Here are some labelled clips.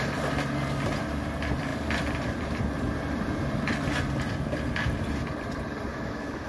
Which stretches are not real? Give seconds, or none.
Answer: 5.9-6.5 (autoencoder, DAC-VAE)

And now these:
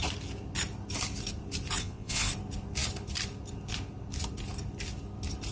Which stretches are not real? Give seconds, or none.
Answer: 1.8-2.3 (vocoder, Vocos)

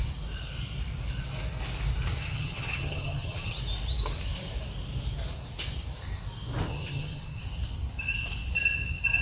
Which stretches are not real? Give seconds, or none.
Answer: 2.2-3.5 (vocoder, HiFi-GAN); 6.7-7.4

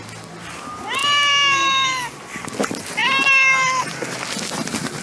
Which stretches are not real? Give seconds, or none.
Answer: none

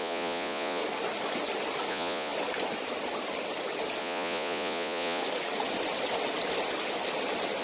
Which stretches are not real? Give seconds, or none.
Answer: 0.0-0.8 (vocoder, Vocos); 1.9-2.3; 4.0-5.2

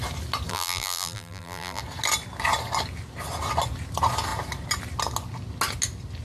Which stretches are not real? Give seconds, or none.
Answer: 0.5-1.8 (vocoder, BigVGAN v2)

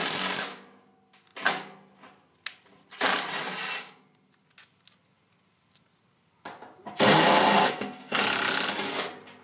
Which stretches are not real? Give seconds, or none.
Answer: 7.6-8.2 (codec, SNAC)

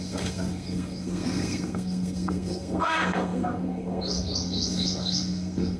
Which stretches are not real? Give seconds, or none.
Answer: 0.0-5.8 (codec, SNAC)